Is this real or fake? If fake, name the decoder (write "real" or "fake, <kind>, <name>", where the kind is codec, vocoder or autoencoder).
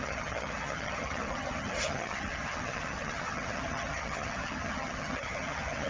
fake, vocoder, HiFi-GAN